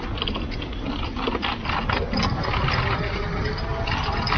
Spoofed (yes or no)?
no